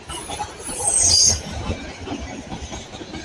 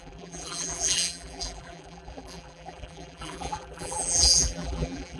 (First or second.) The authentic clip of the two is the first